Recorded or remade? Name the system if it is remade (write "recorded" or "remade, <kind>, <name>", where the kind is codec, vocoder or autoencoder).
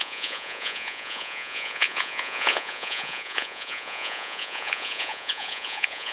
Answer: remade, vocoder, Vocos